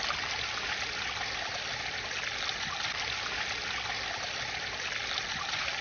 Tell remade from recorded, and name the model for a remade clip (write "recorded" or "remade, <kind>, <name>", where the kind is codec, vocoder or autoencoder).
recorded